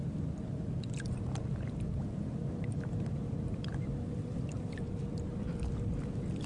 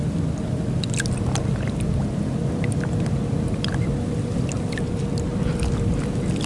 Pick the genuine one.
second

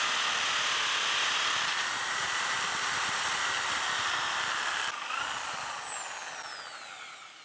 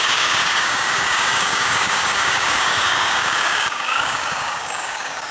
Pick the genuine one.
first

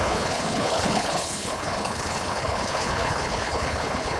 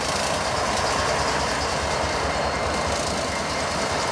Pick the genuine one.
second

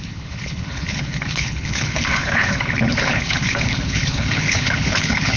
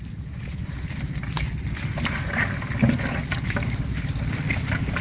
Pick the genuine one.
second